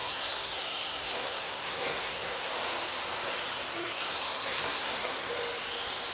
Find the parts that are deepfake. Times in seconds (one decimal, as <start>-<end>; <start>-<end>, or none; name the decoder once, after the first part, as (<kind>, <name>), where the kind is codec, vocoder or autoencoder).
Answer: 0.0-2.5 (codec, SNAC); 3.7-5.3

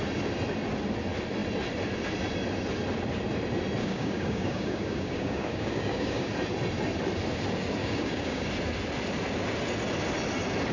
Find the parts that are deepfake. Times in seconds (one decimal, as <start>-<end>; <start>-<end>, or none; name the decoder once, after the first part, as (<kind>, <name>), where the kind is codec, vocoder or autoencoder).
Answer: 3.8-6.3 (codec, DAC); 7.8-8.5

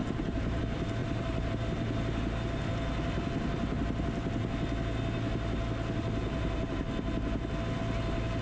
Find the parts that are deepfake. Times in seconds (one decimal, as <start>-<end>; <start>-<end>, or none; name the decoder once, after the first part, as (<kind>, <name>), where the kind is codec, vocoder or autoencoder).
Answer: 0.0-0.6 (vocoder, BigVGAN v2); 1.0-1.5; 6.2-6.8

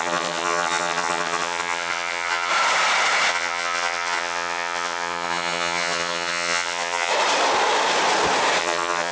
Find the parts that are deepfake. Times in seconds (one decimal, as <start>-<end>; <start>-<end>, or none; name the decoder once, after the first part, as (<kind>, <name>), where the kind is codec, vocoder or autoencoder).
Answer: 0.0-2.5 (vocoder, HiFi-GAN); 3.3-7.1; 8.6-9.1

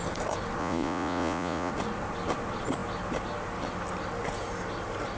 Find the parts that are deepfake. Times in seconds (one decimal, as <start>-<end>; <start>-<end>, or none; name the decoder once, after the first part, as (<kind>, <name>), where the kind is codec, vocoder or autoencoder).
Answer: 0.6-1.7 (vocoder, Vocos)